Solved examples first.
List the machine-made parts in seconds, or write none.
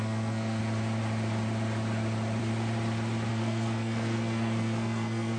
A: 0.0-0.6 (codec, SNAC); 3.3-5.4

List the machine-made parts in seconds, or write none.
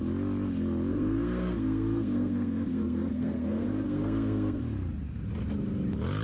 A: 0.9-4.6 (codec, SNAC)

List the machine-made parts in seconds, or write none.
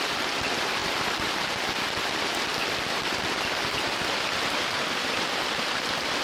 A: none